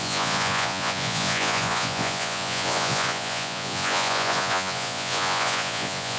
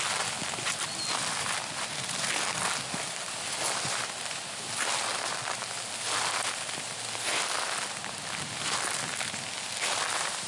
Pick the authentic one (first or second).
second